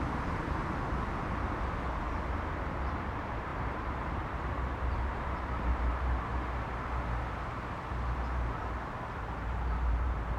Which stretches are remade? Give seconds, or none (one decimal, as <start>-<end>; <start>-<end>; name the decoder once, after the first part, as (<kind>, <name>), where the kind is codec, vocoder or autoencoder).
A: 0.0-0.6 (vocoder, BigVGAN v2); 2.8-6.3; 7.9-10.4